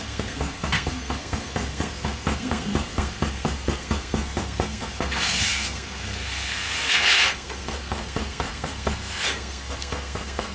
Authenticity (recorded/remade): remade